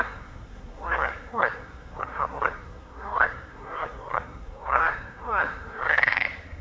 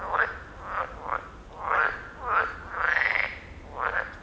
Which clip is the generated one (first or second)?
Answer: first